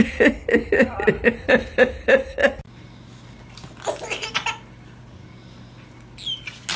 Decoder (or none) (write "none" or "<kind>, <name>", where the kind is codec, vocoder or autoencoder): none